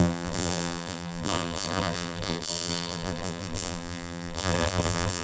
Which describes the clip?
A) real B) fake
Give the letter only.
B